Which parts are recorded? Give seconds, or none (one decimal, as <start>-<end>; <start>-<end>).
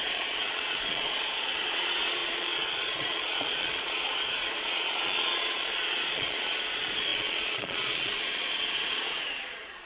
none